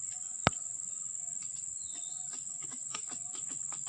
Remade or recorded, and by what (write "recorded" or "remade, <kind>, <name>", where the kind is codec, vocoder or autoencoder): recorded